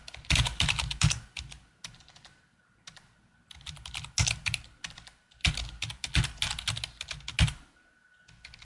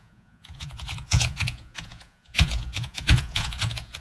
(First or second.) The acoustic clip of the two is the first